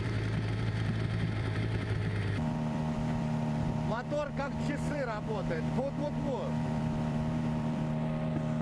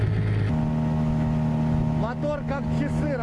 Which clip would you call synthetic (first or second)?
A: first